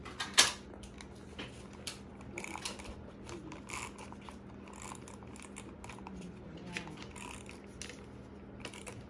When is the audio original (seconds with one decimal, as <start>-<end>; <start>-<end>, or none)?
0.0-9.1